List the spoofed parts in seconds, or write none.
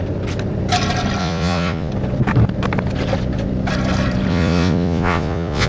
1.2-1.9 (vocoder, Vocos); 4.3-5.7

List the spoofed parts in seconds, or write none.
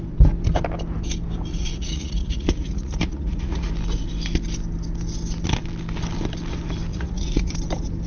1.5-3.7 (vocoder, Vocos); 6.9-7.5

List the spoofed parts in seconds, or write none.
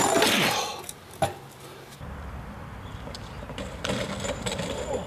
none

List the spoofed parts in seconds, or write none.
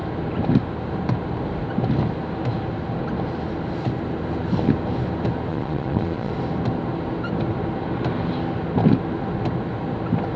5.5-6.3 (vocoder, Vocos)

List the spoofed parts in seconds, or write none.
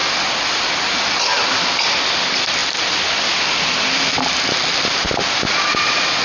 none